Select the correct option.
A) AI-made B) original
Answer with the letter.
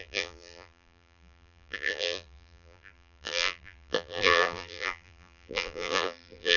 A